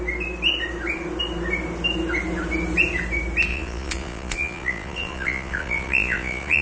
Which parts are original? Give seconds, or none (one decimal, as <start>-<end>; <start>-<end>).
0.0-3.5